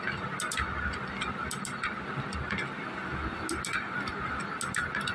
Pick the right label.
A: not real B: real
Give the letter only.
B